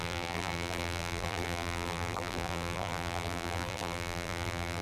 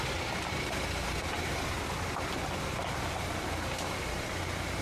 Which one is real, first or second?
second